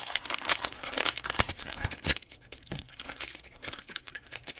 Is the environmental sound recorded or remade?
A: remade